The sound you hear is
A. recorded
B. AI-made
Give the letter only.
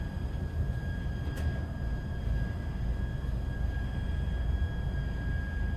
A